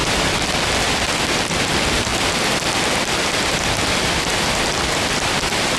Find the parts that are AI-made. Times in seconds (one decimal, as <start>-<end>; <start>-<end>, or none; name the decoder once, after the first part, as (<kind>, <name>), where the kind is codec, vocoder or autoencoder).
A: none